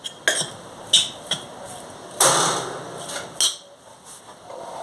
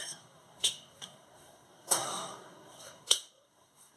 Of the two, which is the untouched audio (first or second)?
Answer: first